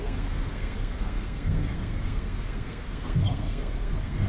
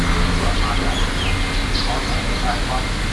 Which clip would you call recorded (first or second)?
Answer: second